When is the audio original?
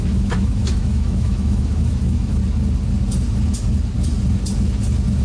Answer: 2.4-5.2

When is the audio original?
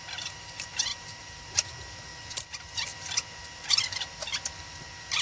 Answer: 2.1-3.8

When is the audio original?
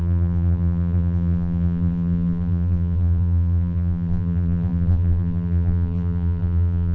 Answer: none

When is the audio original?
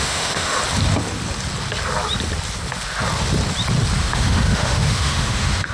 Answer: 0.6-4.0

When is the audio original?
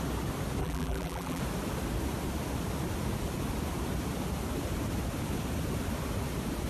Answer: 0.0-0.6; 1.4-6.7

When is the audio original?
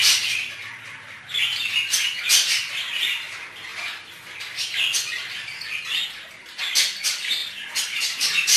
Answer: 0.0-3.3; 3.7-5.1; 5.5-6.4; 7.4-8.0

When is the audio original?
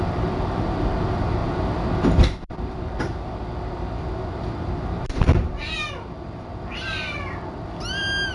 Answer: 0.0-8.3